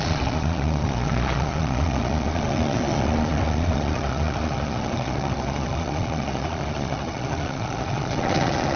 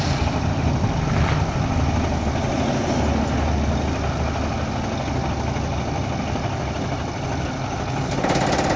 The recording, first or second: second